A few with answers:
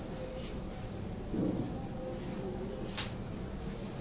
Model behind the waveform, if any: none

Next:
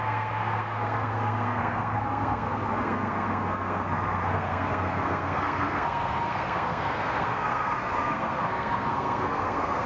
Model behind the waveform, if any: codec, SNAC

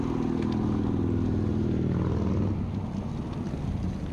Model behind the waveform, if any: none